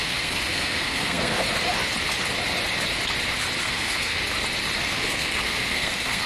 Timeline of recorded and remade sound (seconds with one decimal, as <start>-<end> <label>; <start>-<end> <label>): 0.0-1.4 remade; 1.4-3.6 recorded; 3.6-4.2 remade; 4.2-4.8 recorded; 4.8-6.3 remade